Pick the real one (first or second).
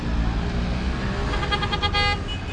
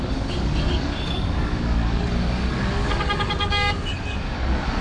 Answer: first